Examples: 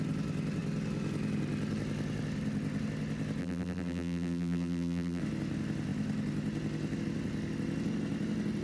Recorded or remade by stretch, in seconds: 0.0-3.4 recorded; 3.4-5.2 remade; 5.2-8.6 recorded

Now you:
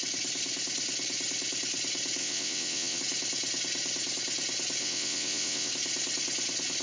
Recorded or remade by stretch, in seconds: 0.0-2.2 recorded; 2.2-3.0 remade; 3.0-4.8 recorded; 4.8-5.7 remade; 5.7-6.8 recorded

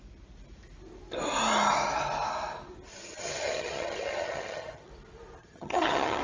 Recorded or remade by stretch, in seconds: 0.0-2.9 recorded; 2.9-4.9 remade; 4.9-5.4 recorded; 5.4-6.2 remade